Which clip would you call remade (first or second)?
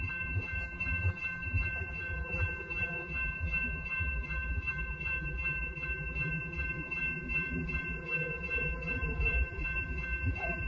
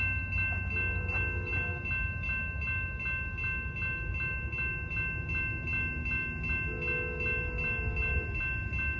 first